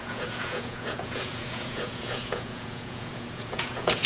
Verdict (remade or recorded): remade